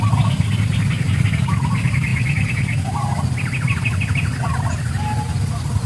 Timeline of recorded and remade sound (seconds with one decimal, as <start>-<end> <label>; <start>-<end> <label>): 0.0-5.9 recorded